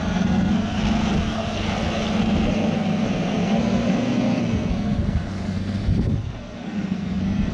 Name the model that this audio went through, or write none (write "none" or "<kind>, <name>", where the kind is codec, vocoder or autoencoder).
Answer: codec, SNAC